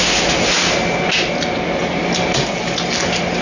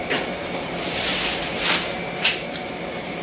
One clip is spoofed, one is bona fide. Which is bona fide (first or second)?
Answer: first